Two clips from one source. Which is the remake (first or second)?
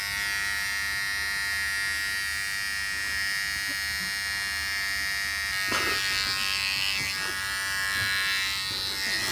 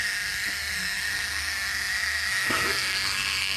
second